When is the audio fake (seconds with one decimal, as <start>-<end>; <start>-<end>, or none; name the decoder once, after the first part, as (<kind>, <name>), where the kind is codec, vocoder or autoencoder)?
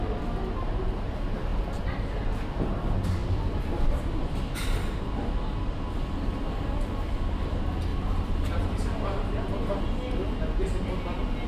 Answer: 7.9-9.8 (vocoder, BigVGAN v2)